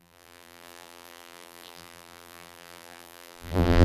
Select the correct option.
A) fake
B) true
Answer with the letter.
A